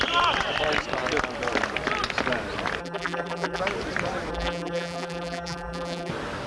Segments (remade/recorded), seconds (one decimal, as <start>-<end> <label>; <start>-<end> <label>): 0.0-2.8 recorded; 2.8-3.6 remade; 3.6-4.3 recorded; 4.3-6.1 remade; 6.1-6.5 recorded